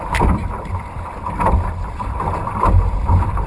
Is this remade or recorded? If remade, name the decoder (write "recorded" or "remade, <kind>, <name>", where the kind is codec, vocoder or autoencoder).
remade, vocoder, BigVGAN v2